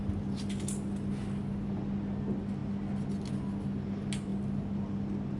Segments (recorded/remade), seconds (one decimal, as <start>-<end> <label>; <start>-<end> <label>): 0.0-5.4 recorded